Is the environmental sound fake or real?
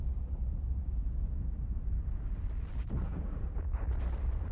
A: real